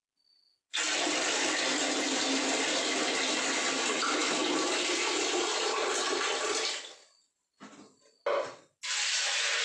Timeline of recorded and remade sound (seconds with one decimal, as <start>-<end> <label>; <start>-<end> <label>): 0.0-9.6 recorded